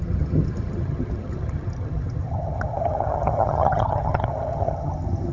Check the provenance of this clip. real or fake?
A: fake